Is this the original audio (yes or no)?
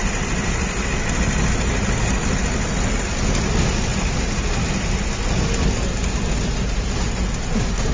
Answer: yes